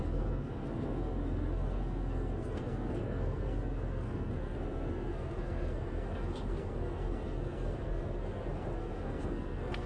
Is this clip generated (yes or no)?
yes